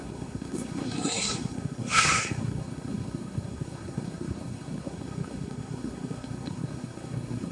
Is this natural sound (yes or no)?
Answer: no